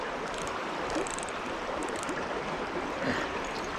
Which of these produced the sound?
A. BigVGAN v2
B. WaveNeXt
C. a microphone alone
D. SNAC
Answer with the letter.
A